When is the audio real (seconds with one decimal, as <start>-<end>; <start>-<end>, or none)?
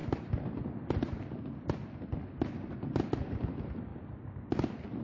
0.0-5.0